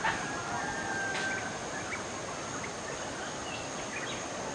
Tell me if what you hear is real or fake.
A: real